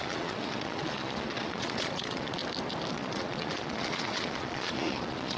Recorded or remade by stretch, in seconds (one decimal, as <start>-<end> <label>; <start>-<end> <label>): 0.0-2.4 remade; 2.4-2.9 recorded; 2.9-5.4 remade

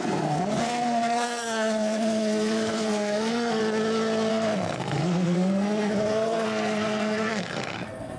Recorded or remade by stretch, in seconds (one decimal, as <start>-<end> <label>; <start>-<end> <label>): 0.0-3.6 remade; 3.6-4.3 recorded; 4.3-8.2 remade

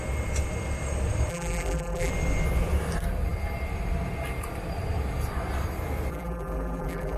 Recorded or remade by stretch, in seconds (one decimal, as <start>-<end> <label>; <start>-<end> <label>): 0.0-1.3 recorded; 1.3-2.1 remade; 2.1-6.1 recorded; 6.1-7.2 remade

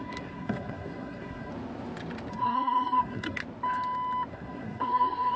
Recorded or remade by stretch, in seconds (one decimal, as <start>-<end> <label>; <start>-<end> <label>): 0.0-1.5 remade; 1.5-2.3 recorded; 2.3-3.4 remade; 3.4-4.3 recorded; 4.3-5.4 remade

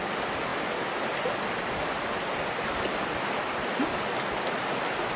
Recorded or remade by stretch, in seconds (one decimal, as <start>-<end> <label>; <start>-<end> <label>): 0.0-5.2 recorded

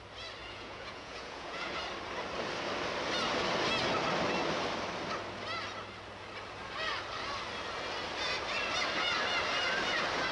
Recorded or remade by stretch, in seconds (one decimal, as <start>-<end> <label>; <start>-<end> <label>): 0.0-0.4 recorded; 0.4-1.8 remade; 1.8-10.3 recorded

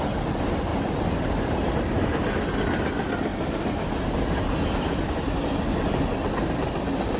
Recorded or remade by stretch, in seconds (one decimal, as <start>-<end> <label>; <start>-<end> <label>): 0.0-7.2 recorded